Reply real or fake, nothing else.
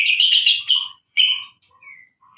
fake